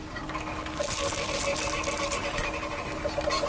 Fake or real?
real